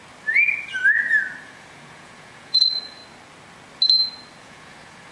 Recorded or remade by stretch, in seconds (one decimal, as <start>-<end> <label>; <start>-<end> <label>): 0.0-1.4 recorded; 1.4-3.0 remade; 3.0-4.4 recorded; 4.4-5.1 remade